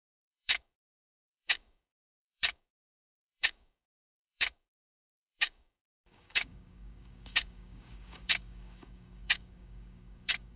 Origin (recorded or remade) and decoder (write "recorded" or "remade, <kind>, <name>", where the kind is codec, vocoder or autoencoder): remade, codec, DAC